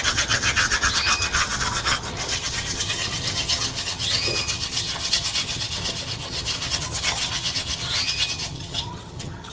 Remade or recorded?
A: remade